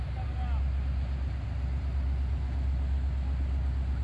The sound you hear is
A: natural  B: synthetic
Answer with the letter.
A